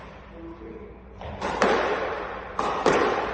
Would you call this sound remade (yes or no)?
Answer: yes